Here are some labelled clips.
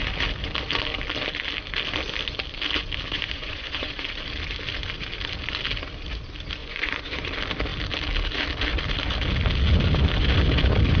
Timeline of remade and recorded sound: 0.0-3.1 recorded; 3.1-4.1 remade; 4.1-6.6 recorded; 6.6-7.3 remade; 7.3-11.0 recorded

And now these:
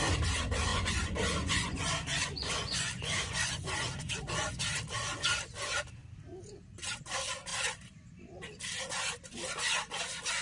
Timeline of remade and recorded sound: 0.0-0.7 recorded; 0.7-4.6 remade; 4.6-10.4 recorded

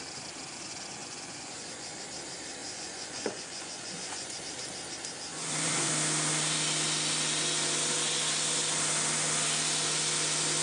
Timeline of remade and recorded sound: 0.0-1.0 recorded; 1.0-2.0 remade; 2.0-2.6 recorded; 2.6-4.4 remade; 4.4-5.3 recorded; 5.3-5.9 remade; 5.9-10.6 recorded

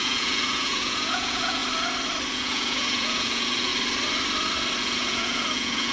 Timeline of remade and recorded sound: 0.0-1.6 remade; 1.6-2.3 recorded; 2.3-3.7 remade; 3.7-4.8 recorded; 4.8-5.9 remade

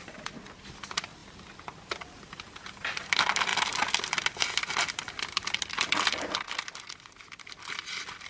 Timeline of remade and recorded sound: 0.0-8.3 recorded

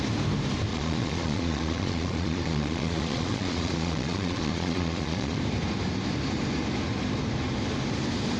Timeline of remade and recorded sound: 0.0-0.7 recorded; 0.7-5.4 remade; 5.4-8.4 recorded

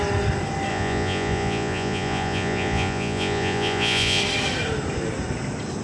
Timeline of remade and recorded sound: 0.0-0.7 recorded; 0.7-4.2 remade; 4.2-5.8 recorded